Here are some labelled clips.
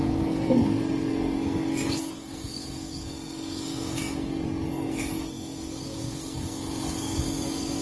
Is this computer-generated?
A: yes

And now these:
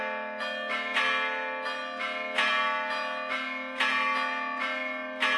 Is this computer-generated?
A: no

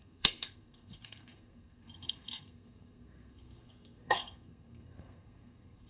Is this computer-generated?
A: yes